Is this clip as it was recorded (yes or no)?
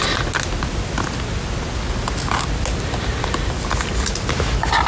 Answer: yes